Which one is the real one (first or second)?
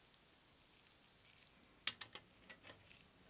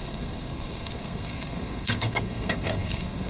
first